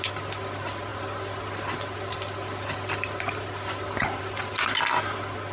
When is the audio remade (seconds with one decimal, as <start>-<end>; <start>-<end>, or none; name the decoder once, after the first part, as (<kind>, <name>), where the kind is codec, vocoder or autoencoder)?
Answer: none